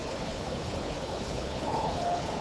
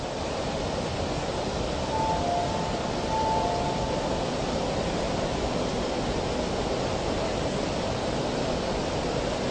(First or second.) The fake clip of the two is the first